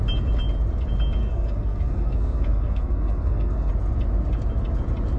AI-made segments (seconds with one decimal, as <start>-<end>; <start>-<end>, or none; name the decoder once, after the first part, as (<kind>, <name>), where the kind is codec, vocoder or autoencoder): 1.2-3.7 (codec, SNAC)